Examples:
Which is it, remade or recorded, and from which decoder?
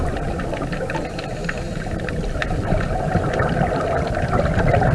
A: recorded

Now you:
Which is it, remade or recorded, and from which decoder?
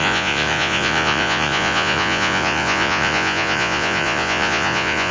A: remade, vocoder, Vocos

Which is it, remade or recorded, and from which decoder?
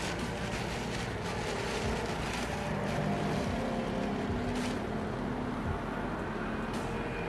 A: recorded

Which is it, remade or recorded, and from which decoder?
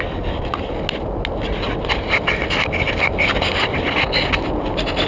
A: recorded